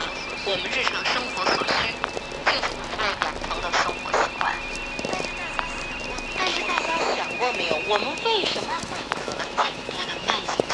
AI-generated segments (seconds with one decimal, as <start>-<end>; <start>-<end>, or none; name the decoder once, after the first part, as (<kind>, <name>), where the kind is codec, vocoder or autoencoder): 6.5-10.7 (autoencoder, DAC-VAE)